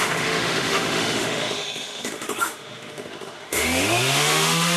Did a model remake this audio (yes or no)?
yes